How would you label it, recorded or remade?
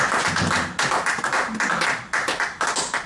recorded